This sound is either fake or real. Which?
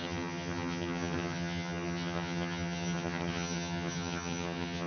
fake